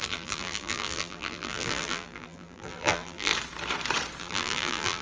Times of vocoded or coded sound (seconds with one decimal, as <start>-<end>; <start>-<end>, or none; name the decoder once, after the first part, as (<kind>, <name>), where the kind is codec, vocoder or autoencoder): 0.0-3.3 (vocoder, BigVGAN v2); 4.2-5.0